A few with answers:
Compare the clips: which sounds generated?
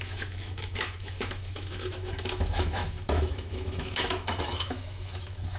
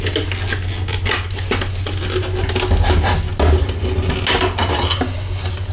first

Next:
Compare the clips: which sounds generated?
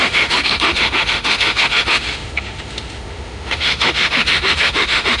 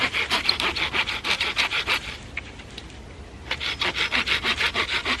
first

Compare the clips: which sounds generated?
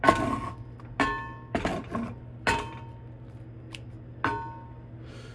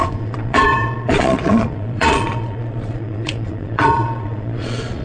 second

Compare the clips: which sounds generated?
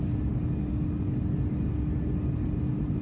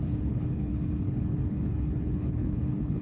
second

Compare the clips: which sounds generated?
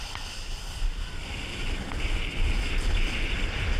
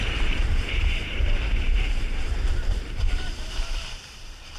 second